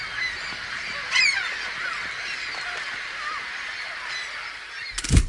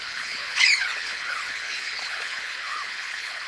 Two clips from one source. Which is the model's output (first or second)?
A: second